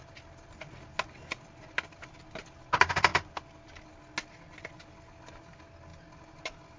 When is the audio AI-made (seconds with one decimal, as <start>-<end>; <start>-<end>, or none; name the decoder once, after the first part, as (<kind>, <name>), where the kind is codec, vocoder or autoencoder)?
none